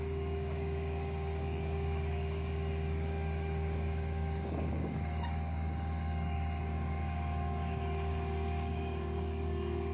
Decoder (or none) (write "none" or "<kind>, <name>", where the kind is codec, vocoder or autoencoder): codec, DAC